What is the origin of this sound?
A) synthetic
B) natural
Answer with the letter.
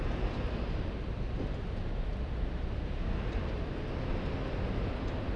B